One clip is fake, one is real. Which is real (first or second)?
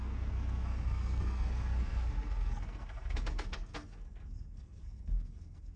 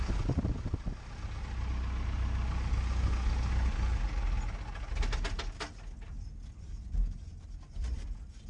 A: second